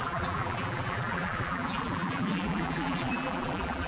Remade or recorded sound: remade